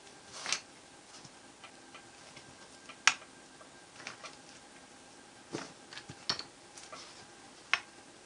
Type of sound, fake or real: real